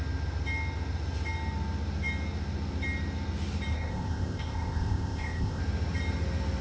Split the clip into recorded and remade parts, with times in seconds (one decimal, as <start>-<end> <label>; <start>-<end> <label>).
0.0-3.7 recorded; 3.7-5.6 remade; 5.6-6.6 recorded